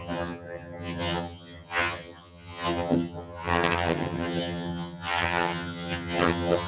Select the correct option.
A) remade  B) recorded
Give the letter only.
A